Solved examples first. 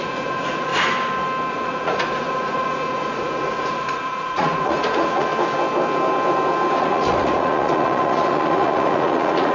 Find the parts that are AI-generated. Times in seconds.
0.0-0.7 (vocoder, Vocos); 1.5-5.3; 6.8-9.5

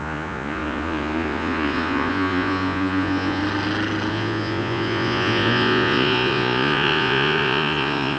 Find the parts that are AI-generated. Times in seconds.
0.0-3.4 (vocoder, Vocos); 4.1-8.2

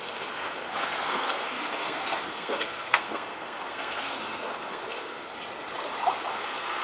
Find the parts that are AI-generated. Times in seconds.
0.0-5.3 (codec, SNAC); 6.3-6.8

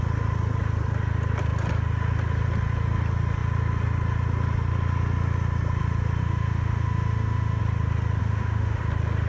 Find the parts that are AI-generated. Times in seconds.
6.2-7.6 (autoencoder, DAC-VAE); 8.2-8.8

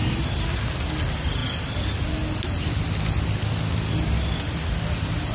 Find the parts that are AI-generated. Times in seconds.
none

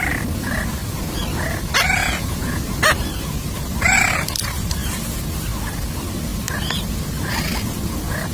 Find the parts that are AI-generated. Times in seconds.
2.0-2.6 (vocoder, Vocos)

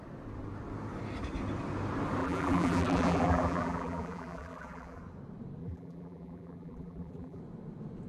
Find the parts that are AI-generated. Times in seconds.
2.2-5.0 (vocoder, BigVGAN v2); 5.6-7.4